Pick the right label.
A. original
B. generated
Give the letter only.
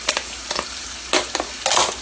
A